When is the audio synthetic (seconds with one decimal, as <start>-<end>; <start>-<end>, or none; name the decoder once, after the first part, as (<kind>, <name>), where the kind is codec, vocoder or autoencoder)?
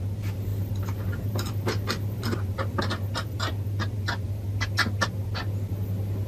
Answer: 0.5-2.8 (vocoder, BigVGAN v2)